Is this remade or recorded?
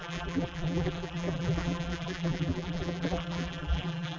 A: remade